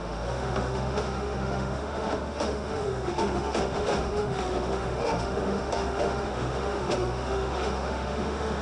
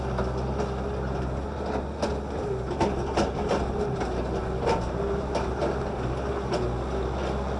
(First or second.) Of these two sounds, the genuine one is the second